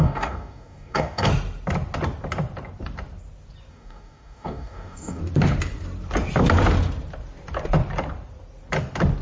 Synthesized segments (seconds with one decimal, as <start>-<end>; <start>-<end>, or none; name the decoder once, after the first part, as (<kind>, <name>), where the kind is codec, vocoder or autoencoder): 0.0-1.3 (codec, DAC); 3.7-5.2